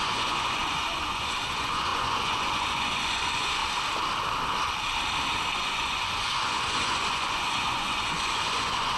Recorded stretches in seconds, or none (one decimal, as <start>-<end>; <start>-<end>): 3.6-5.5

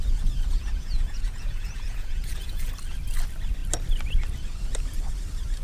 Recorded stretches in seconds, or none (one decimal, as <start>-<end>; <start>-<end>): 0.0-0.5; 2.7-5.6

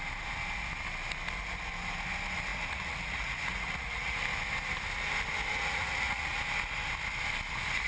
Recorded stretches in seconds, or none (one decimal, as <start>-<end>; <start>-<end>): 0.0-2.5; 4.2-5.5; 6.4-7.9

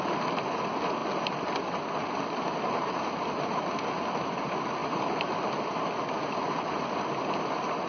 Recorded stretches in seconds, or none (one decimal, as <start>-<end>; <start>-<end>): 0.0-7.9

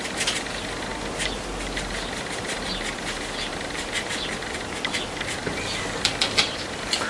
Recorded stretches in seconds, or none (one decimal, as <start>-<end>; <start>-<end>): 0.0-7.1

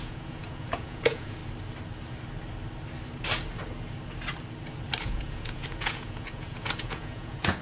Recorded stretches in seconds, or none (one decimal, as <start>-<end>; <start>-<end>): 1.4-5.0

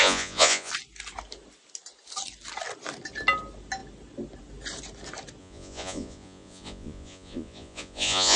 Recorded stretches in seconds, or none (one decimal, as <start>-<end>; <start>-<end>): 0.7-5.4

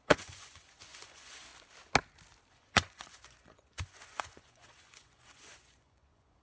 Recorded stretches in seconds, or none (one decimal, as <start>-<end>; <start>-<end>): 1.5-2.5